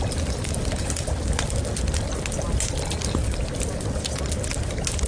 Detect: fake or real real